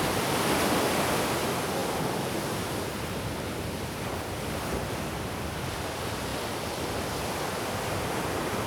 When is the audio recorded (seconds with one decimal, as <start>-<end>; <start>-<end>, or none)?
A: 0.0-8.7